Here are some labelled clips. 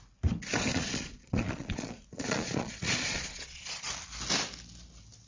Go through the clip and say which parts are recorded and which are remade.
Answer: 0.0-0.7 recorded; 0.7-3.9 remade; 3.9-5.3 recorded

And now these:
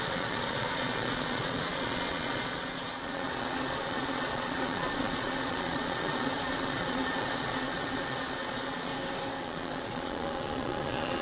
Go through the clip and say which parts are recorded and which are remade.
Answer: 0.0-8.9 remade; 8.9-9.4 recorded; 9.4-11.2 remade

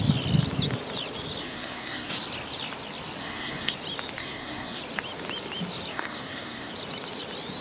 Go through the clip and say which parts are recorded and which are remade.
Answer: 0.0-1.4 recorded; 1.4-2.1 remade; 2.1-3.2 recorded; 3.2-3.7 remade; 3.7-4.2 recorded; 4.2-4.8 remade; 4.8-5.9 recorded; 5.9-6.7 remade; 6.7-7.6 recorded

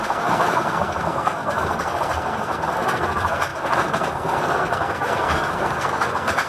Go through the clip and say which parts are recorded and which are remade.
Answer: 0.0-6.5 remade

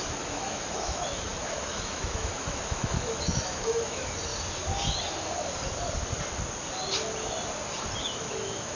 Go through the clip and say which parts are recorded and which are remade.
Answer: 0.0-4.3 remade; 4.3-8.0 recorded; 8.0-8.8 remade

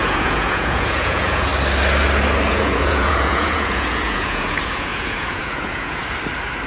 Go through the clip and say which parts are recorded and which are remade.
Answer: 0.0-1.5 remade; 1.5-2.5 recorded; 2.5-6.0 remade; 6.0-6.7 recorded